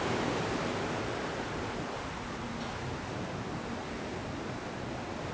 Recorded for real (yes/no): yes